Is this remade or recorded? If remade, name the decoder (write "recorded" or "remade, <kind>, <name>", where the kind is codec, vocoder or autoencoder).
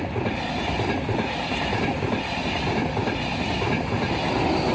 recorded